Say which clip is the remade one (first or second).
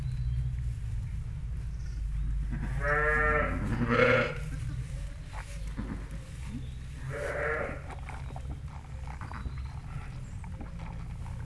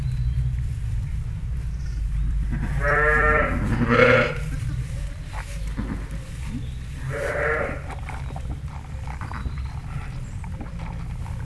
second